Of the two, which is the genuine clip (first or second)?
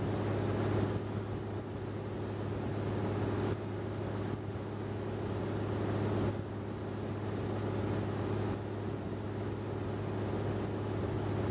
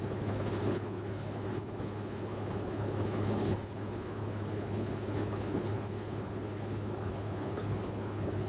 first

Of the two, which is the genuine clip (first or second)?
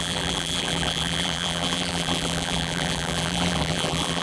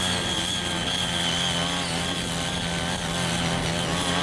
second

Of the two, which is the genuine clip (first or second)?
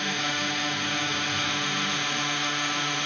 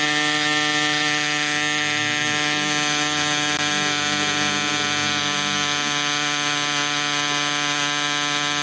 second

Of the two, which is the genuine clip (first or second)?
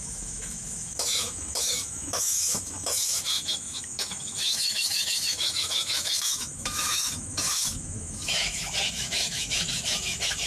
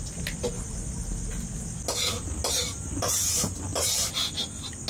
second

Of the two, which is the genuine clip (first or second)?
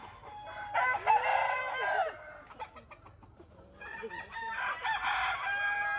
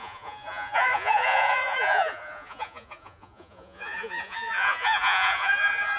first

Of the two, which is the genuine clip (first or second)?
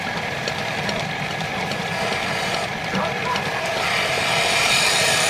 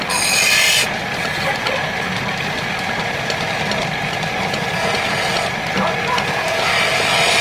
second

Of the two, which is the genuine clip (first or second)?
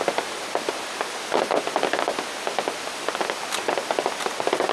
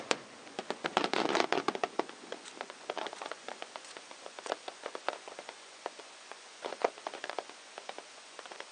first